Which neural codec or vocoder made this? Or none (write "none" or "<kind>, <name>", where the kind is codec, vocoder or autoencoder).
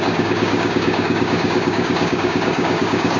codec, DAC